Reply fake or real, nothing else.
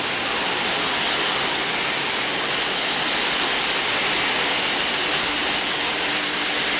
real